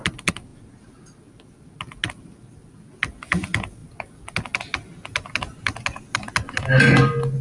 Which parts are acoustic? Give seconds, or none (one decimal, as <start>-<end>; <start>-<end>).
0.0-7.4